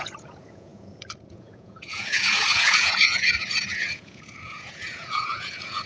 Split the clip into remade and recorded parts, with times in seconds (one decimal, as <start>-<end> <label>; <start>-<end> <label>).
0.0-5.9 remade